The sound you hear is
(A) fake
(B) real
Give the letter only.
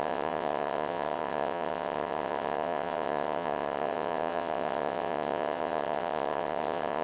A